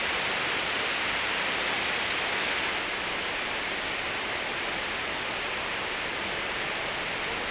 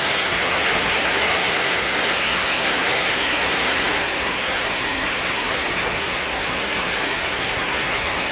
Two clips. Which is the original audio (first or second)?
first